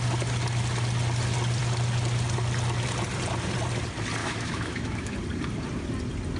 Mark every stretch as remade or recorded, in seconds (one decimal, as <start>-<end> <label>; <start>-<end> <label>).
0.0-4.2 recorded; 4.2-5.1 remade; 5.1-6.4 recorded